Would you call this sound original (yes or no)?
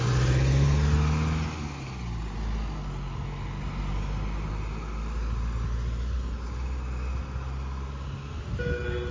yes